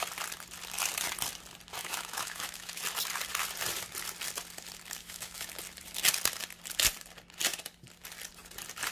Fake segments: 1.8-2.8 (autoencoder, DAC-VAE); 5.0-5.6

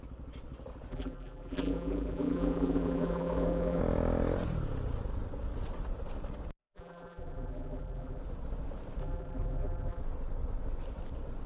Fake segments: 0.9-3.8 (vocoder, BigVGAN v2); 6.6-8.2; 9.0-10.0

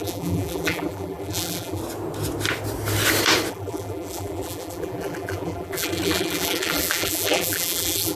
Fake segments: 0.0-1.8 (vocoder, BigVGAN v2); 3.5-8.2

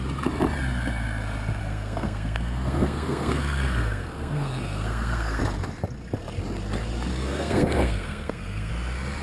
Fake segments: 1.6-5.4 (codec, SNAC); 7.1-8.7

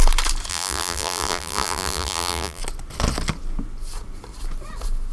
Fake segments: 0.5-2.6 (vocoder, BigVGAN v2)

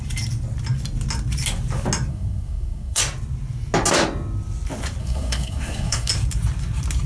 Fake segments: 2.1-3.0 (codec, SNAC); 5.0-6.1

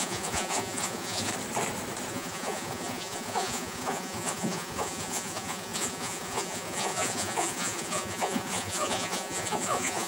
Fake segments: 0.0-1.3 (vocoder, Vocos); 2.1-10.1

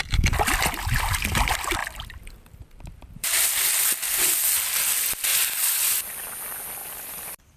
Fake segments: 0.0-1.2 (vocoder, BigVGAN v2); 1.8-3.6; 5.3-6.3; 6.8-7.6